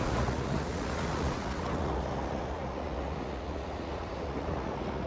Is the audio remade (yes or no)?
yes